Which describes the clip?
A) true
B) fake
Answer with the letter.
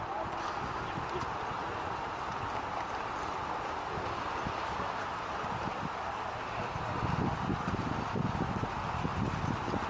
A